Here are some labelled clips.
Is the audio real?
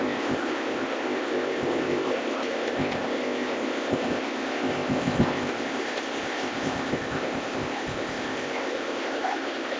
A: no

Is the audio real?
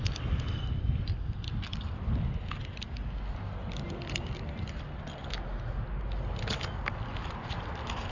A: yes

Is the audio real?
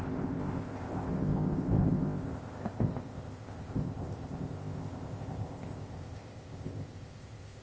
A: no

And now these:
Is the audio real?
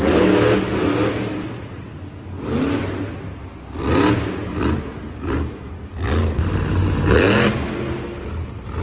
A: yes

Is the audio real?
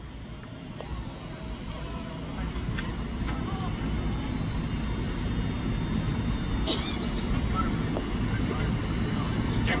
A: yes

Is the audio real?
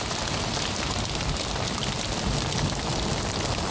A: yes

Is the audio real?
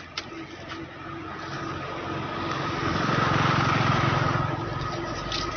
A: yes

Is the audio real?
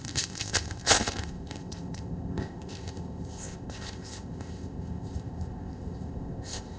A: no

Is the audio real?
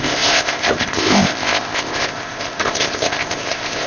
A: no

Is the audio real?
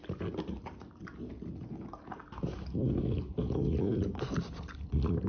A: yes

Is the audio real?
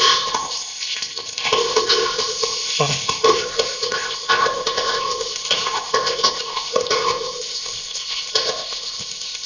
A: no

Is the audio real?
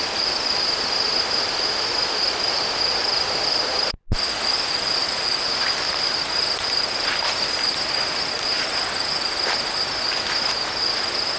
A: yes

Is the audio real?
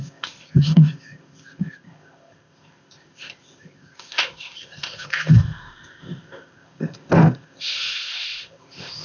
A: no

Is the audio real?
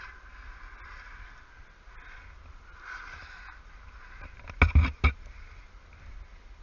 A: yes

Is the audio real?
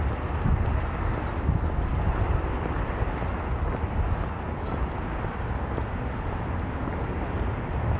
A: yes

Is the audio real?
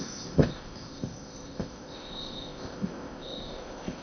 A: no